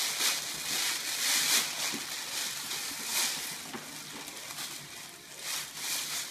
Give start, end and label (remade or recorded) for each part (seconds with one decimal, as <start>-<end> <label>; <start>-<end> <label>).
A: 0.0-6.3 recorded

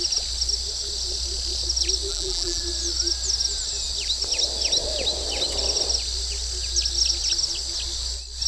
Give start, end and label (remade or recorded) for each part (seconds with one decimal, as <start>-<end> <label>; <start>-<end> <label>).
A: 0.0-2.1 recorded; 2.1-2.6 remade; 2.6-8.5 recorded

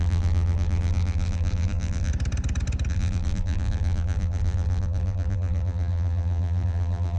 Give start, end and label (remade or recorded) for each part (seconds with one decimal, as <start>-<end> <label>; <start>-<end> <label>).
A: 0.0-2.1 remade; 2.1-2.9 recorded; 2.9-7.2 remade

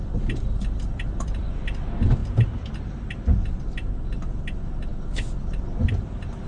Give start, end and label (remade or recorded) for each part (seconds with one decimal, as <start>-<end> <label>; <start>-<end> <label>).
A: 0.0-1.5 remade; 1.5-6.5 recorded